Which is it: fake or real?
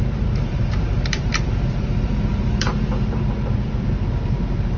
fake